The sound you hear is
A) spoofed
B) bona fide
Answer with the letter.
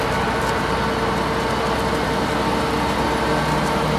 B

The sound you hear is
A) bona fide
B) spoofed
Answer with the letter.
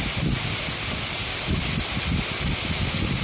A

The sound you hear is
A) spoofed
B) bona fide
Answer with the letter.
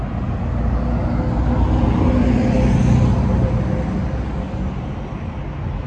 B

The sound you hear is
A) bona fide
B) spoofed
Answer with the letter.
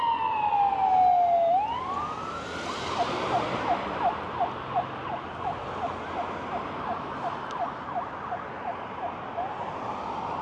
A